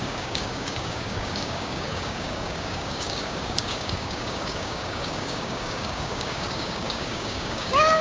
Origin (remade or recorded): remade